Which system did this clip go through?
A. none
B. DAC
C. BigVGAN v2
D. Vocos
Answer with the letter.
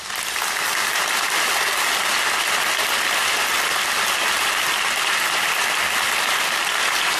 A